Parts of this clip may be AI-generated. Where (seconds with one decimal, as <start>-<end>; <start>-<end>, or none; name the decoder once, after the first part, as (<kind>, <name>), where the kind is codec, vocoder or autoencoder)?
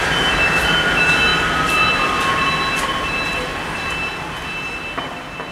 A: 0.0-1.3 (vocoder, BigVGAN v2); 2.8-3.5